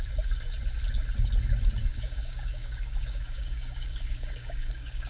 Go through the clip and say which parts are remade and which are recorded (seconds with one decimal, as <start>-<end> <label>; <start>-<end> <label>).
0.0-1.9 recorded; 1.9-5.1 remade